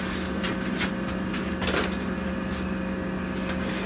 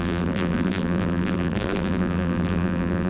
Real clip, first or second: first